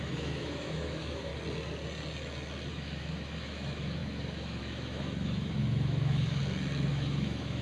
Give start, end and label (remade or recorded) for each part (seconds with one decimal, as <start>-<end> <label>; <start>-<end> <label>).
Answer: 0.0-1.3 remade; 1.3-2.7 recorded; 2.7-6.4 remade; 6.4-6.9 recorded; 6.9-7.6 remade